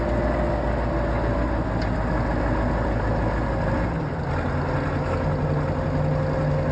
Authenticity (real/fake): real